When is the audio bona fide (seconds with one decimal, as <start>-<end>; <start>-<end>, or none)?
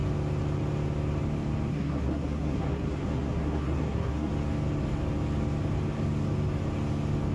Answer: 0.0-1.7; 4.3-7.3